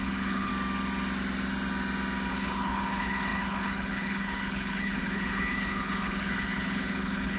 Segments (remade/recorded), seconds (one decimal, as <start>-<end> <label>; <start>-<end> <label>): 0.0-0.5 remade; 0.5-2.3 recorded; 2.3-7.4 remade